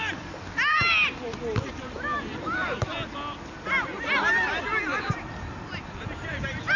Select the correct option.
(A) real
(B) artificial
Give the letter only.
A